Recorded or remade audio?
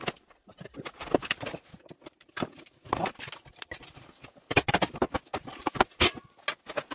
recorded